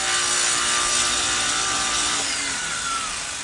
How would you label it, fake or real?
real